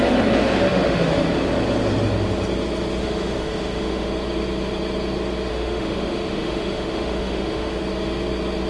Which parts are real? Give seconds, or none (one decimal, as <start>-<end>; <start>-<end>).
0.0-0.7; 1.3-3.0; 4.1-5.5; 7.8-8.7